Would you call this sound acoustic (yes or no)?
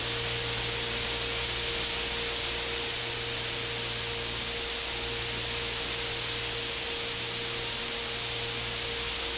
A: yes